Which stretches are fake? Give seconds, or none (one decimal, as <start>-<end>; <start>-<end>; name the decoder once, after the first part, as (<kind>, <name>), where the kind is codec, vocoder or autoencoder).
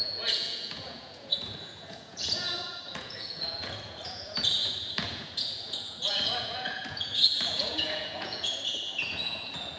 0.0-9.8 (vocoder, Vocos)